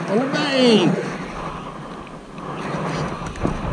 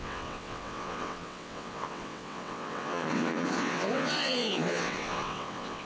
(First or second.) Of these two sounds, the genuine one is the first